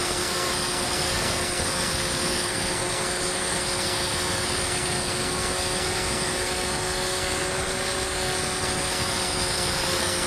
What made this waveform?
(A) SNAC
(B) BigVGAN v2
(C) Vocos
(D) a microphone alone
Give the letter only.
A